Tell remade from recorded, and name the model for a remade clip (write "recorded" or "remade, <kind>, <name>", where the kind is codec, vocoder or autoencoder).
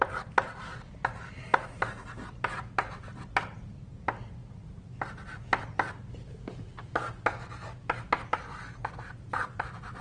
recorded